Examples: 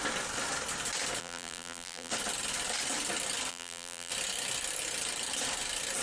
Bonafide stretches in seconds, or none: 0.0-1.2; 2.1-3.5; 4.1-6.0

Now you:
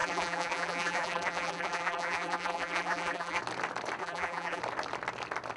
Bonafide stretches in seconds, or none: 3.4-4.0; 4.6-5.6

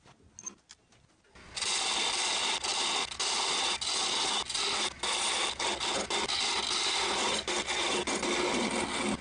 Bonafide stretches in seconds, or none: 0.0-9.2

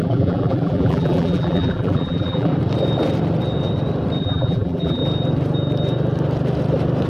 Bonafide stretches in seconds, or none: 2.5-4.2; 5.0-7.1

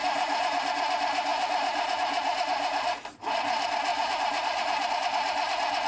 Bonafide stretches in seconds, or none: 0.6-1.3; 3.3-3.9; 4.9-5.9

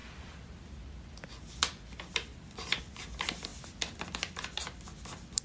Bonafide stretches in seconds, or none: 0.0-5.4

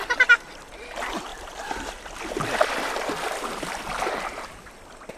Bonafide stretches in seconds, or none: 0.0-1.3; 4.4-5.2